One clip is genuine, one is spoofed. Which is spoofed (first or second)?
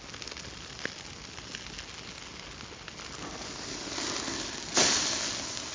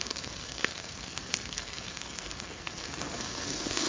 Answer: second